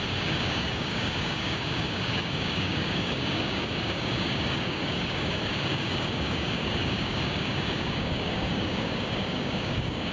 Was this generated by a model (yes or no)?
yes